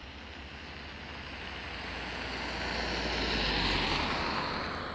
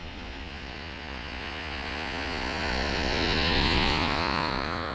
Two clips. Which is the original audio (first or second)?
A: first